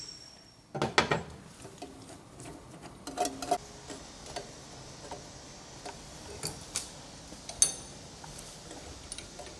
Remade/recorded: recorded